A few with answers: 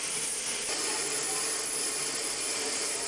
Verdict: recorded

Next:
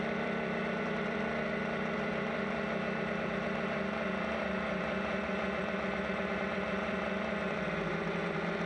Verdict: remade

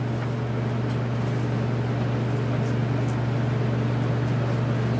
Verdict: recorded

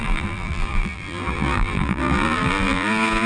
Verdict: remade